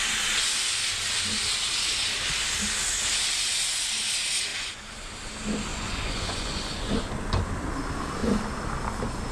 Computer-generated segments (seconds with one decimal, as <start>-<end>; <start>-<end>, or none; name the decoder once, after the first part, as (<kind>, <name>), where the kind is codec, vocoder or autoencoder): 4.5-5.1 (vocoder, Vocos); 5.7-6.9

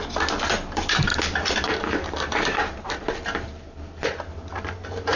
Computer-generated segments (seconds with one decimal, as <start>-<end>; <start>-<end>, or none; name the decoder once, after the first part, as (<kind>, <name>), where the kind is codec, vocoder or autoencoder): 1.1-3.1 (vocoder, BigVGAN v2)

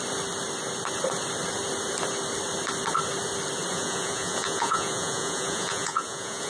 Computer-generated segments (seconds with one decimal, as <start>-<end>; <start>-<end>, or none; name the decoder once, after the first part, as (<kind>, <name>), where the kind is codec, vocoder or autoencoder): 3.7-6.5 (vocoder, Vocos)

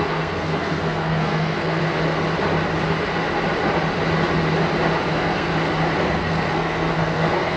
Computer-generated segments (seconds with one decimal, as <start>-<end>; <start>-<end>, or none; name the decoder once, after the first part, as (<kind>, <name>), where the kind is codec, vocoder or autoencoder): 0.0-1.8 (codec, SNAC); 5.1-5.5; 6.0-7.6

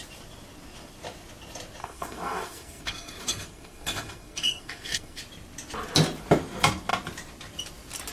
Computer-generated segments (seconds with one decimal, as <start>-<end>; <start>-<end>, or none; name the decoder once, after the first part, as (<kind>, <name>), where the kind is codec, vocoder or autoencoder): 1.8-5.2 (codec, SNAC)

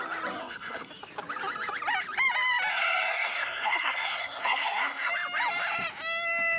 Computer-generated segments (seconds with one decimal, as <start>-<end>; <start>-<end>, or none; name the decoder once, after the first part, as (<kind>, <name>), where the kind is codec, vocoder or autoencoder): 0.4-0.9 (codec, SNAC); 2.7-5.1